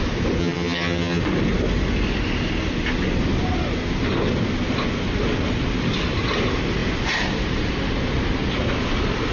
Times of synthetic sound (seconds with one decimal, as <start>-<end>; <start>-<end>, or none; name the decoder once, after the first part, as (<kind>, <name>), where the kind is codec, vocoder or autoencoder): 0.4-1.2 (vocoder, HiFi-GAN)